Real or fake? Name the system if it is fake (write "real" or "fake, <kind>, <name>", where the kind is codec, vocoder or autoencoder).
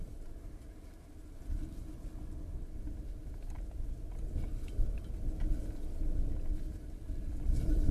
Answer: real